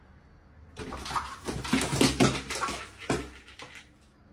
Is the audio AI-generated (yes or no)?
no